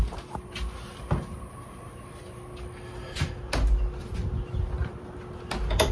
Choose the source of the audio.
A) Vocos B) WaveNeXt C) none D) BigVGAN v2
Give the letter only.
C